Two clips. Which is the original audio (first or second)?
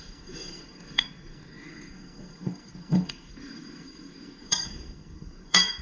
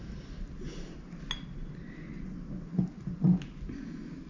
second